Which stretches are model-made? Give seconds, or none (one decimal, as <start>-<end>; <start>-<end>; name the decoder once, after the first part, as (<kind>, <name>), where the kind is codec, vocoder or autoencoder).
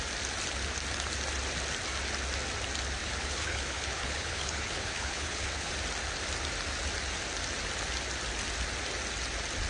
3.0-5.7 (codec, HILCodec)